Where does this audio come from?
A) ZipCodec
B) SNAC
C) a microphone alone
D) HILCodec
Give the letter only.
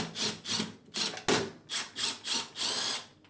C